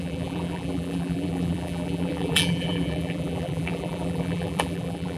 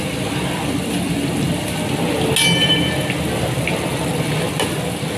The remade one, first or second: first